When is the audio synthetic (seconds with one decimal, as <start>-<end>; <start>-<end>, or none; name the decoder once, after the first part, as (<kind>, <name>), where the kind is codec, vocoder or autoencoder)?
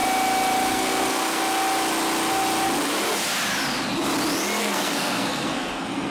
0.7-1.4 (codec, SNAC); 4.6-6.1